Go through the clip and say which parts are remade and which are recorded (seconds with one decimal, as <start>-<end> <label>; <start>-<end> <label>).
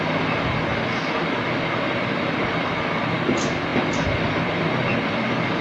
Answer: 0.0-5.6 recorded